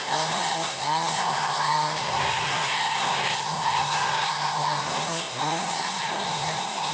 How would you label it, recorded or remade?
remade